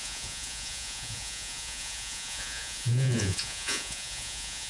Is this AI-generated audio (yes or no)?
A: yes